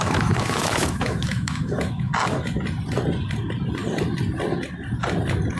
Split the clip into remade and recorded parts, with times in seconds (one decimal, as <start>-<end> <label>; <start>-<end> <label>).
0.0-2.1 remade; 2.1-5.6 recorded